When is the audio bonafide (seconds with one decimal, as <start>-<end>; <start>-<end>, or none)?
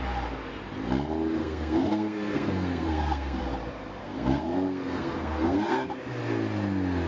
0.0-1.4; 3.4-4.0; 6.0-7.1